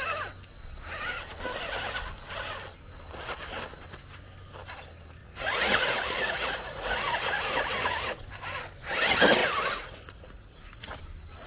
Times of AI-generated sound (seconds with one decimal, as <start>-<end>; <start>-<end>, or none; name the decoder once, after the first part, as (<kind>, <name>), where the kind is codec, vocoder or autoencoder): 5.2-8.2 (vocoder, Vocos); 9.4-11.0